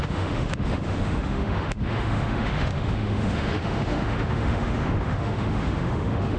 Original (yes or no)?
no